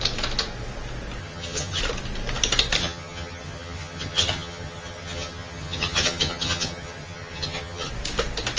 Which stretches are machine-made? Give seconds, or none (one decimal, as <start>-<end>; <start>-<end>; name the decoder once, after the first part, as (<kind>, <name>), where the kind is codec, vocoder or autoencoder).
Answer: 1.2-1.8 (vocoder, HiFi-GAN); 2.8-7.9